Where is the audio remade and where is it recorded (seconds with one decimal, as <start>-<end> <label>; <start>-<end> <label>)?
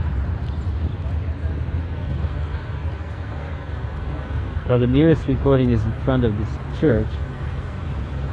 0.0-1.8 recorded; 1.8-6.0 remade; 6.0-6.7 recorded; 6.7-8.3 remade